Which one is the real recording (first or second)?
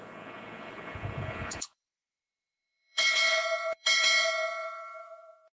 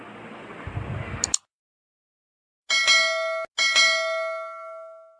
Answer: second